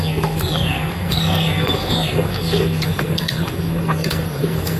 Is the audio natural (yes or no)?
no